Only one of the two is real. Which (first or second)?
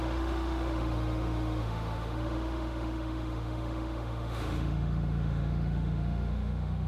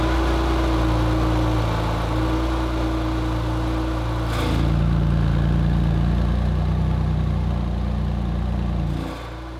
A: second